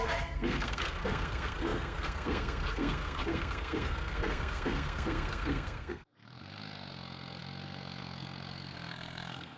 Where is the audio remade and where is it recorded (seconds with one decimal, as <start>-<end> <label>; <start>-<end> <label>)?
0.0-9.6 remade